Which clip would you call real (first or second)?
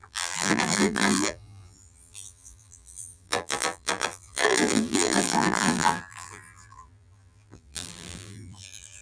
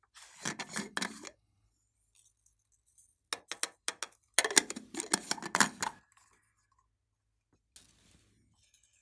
second